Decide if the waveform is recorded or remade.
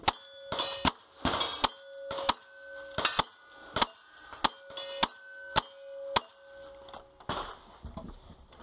recorded